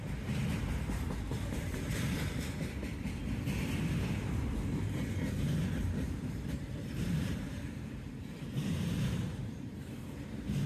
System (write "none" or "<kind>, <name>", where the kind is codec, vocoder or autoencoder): vocoder, BigVGAN v2